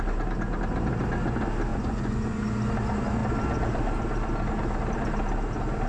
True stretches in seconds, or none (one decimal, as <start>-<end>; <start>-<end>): 0.0-1.7; 2.4-5.9